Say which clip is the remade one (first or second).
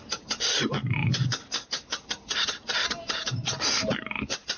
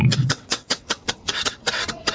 second